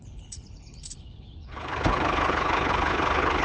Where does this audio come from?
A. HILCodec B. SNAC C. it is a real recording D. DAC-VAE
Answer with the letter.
A